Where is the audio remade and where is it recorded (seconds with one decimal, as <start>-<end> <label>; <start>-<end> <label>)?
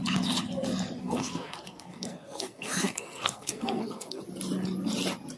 0.0-1.0 recorded; 1.0-4.2 remade; 4.2-5.4 recorded